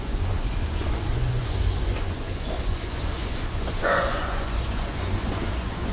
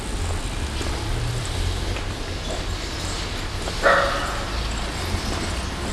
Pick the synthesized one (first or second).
first